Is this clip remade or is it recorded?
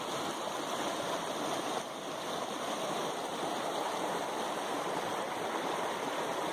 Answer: recorded